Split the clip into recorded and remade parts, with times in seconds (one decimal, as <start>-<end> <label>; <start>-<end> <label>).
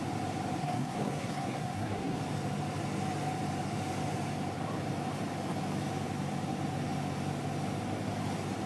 0.0-0.6 recorded; 0.6-2.2 remade; 2.2-8.7 recorded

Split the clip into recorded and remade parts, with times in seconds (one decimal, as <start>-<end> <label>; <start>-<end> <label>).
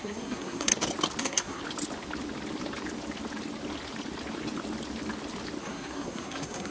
0.0-0.7 remade; 0.7-1.2 recorded; 1.2-1.6 remade; 1.6-5.6 recorded; 5.6-6.7 remade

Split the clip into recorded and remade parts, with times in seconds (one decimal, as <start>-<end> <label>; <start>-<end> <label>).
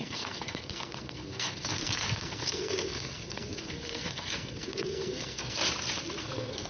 0.0-5.6 remade; 5.6-6.2 recorded; 6.2-6.7 remade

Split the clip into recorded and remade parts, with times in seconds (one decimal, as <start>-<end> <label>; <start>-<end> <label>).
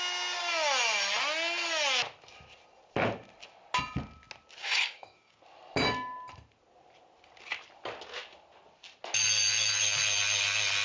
0.0-4.6 recorded; 4.6-5.4 remade; 5.4-10.8 recorded